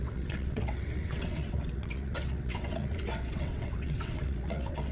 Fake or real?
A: fake